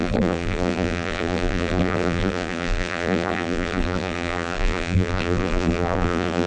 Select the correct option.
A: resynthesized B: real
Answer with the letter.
A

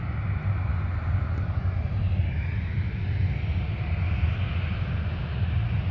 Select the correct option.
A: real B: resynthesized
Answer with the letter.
A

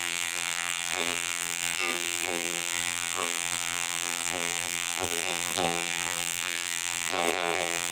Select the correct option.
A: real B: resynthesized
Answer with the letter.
B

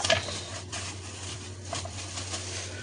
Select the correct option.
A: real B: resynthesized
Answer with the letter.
B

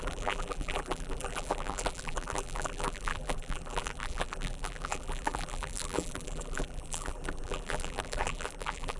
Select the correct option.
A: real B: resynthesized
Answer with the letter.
B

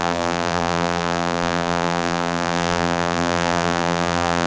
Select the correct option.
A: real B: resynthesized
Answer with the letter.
B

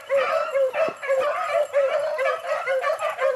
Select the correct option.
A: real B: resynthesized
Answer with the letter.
B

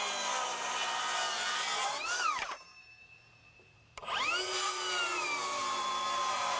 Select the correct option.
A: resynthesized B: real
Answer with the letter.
A